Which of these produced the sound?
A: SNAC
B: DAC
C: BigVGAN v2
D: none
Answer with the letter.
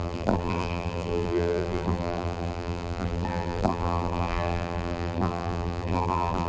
C